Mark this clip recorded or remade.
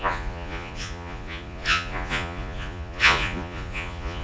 remade